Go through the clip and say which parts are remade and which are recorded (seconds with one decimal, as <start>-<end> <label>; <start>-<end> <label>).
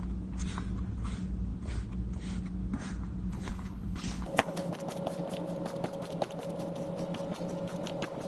0.0-3.3 recorded; 3.3-4.7 remade; 4.7-8.3 recorded